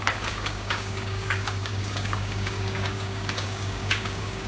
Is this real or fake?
fake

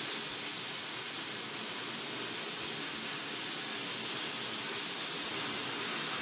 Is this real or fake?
real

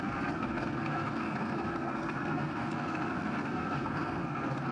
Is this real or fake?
fake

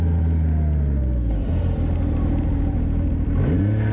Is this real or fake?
real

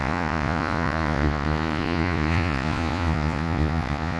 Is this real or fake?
fake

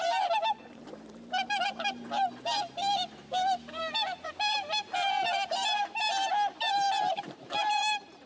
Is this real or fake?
fake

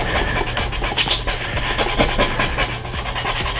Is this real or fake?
real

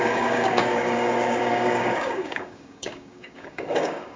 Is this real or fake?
fake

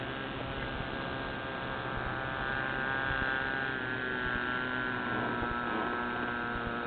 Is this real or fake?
real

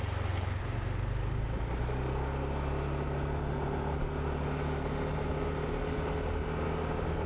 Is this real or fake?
real